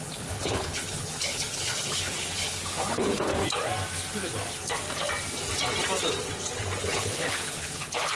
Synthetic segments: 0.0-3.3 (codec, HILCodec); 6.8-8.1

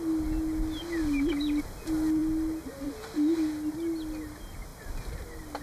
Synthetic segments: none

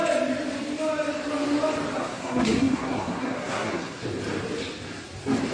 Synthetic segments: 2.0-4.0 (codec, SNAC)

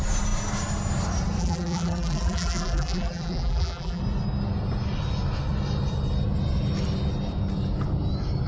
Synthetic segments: 1.4-4.0 (vocoder, BigVGAN v2)

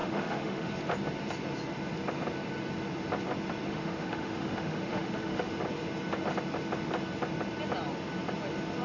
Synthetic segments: 0.0-0.7 (autoencoder, DAC-VAE); 3.7-5.5